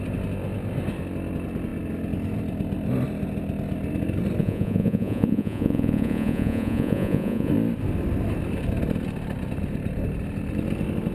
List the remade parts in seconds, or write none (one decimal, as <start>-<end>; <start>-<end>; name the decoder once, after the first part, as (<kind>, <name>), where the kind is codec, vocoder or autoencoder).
4.4-7.5 (vocoder, Vocos)